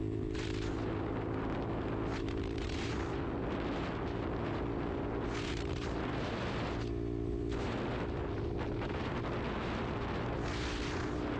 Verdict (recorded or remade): recorded